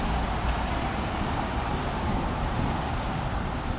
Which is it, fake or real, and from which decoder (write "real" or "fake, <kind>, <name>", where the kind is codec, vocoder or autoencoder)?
fake, vocoder, BigVGAN v2